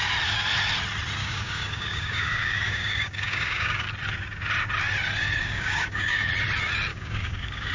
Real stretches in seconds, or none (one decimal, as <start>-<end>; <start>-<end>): 0.0-1.2; 3.9-5.4; 6.3-6.9